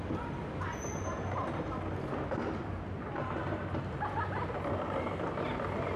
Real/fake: real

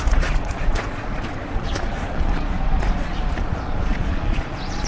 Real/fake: fake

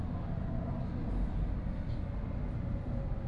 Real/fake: real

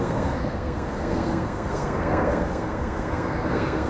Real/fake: fake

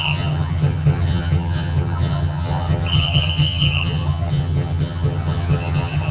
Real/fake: fake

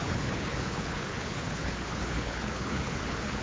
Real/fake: fake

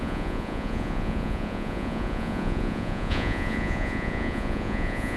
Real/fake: fake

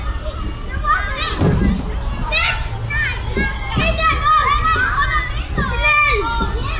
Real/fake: real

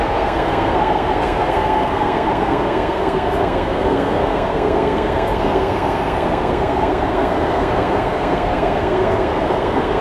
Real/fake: fake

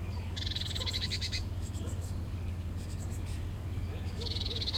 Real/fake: fake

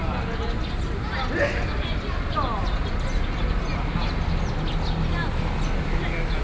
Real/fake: real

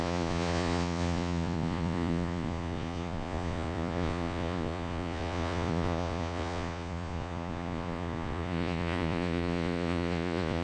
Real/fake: fake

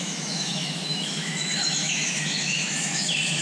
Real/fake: fake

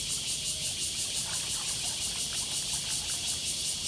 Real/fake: real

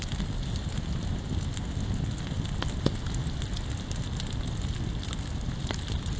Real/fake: real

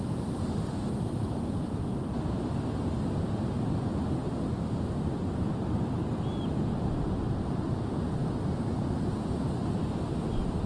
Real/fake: real